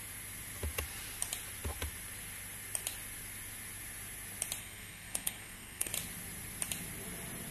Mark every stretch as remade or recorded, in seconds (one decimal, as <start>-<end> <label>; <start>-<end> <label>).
0.0-4.6 recorded; 4.6-5.9 remade; 5.9-7.5 recorded